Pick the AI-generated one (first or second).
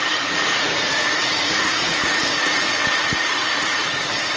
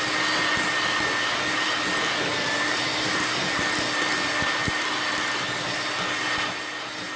first